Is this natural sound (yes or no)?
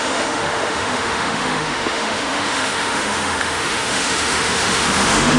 no